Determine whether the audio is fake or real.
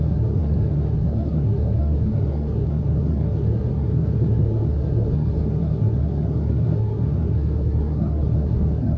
fake